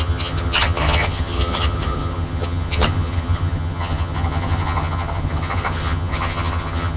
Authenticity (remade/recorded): remade